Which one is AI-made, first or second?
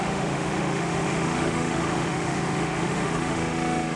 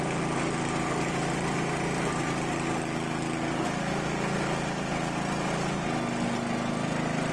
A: first